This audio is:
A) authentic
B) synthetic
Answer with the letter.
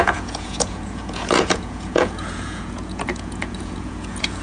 B